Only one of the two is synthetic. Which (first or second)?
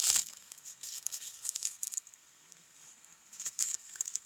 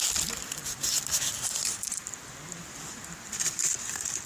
first